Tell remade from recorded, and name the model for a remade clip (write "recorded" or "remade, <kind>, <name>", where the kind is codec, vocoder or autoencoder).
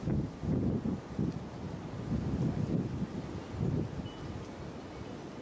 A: recorded